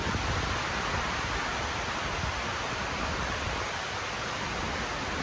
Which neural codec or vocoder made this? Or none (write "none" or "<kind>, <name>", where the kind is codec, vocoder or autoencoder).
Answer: none